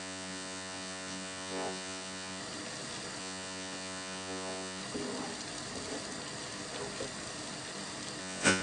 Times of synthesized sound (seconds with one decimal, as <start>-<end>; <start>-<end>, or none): 0.0-2.4; 3.2-4.8; 8.2-8.6